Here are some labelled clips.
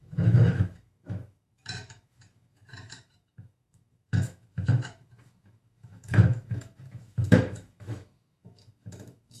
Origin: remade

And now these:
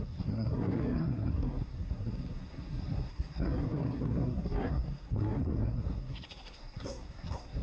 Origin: remade